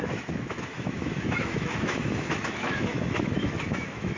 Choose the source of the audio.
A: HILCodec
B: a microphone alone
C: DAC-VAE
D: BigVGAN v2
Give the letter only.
C